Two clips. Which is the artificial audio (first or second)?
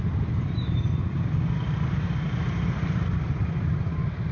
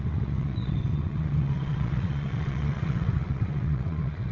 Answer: second